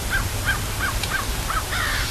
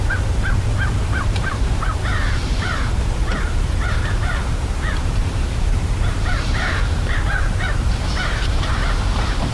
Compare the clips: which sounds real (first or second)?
first